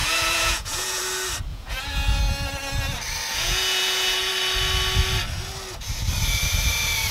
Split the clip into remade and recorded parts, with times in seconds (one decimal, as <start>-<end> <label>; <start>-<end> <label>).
0.0-1.0 remade; 1.0-1.5 recorded; 1.5-2.2 remade; 2.2-3.3 recorded; 3.3-4.3 remade; 4.3-7.1 recorded